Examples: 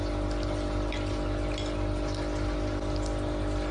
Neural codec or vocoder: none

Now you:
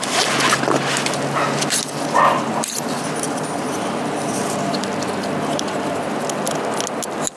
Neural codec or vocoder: none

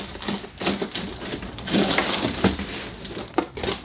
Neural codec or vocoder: none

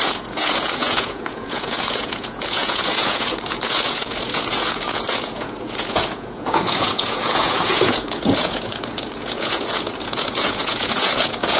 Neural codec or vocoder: vocoder, Vocos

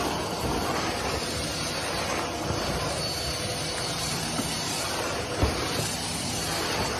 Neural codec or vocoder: none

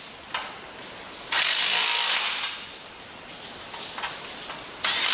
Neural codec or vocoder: none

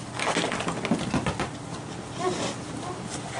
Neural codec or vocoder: none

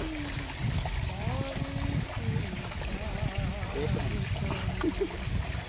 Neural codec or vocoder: none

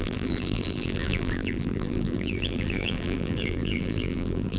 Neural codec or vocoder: vocoder, BigVGAN v2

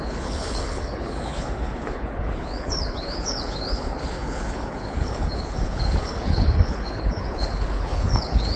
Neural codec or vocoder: codec, HILCodec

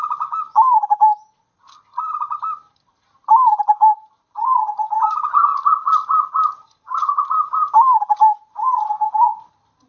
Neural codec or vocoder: none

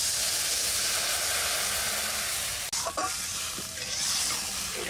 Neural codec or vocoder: none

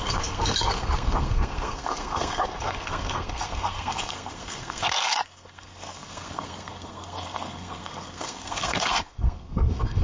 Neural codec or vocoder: codec, SNAC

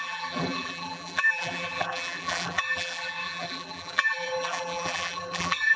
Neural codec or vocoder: vocoder, BigVGAN v2